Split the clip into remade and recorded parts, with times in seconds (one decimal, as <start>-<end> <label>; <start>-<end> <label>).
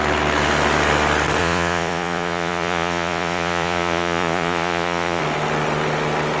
0.0-1.4 recorded; 1.4-5.2 remade; 5.2-6.4 recorded